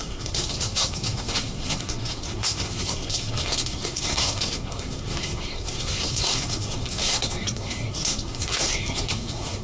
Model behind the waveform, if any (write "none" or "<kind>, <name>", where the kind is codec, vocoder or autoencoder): codec, SNAC